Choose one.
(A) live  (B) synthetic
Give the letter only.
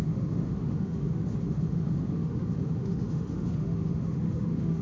B